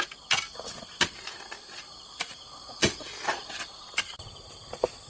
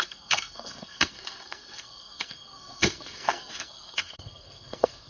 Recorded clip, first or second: first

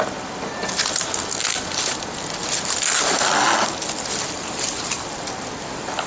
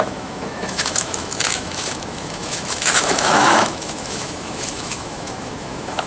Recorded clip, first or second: first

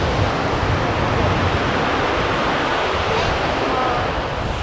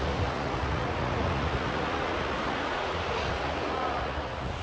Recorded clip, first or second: first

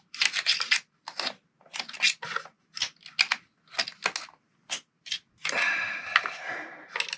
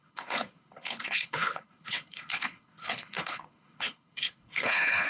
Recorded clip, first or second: first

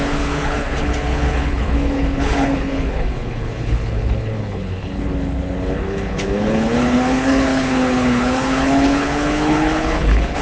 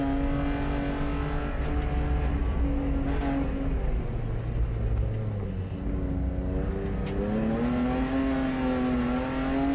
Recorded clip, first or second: second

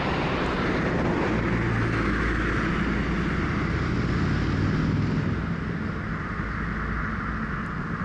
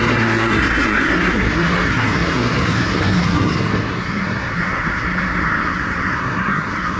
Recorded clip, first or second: first